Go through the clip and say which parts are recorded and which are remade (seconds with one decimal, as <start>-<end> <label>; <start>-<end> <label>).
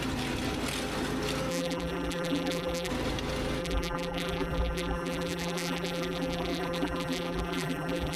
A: 0.0-1.5 recorded; 1.5-2.9 remade; 2.9-3.6 recorded; 3.6-8.2 remade